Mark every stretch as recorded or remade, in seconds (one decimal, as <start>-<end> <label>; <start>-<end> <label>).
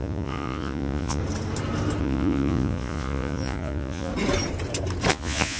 0.0-1.2 remade; 1.2-2.0 recorded; 2.0-4.1 remade; 4.1-5.1 recorded; 5.1-5.6 remade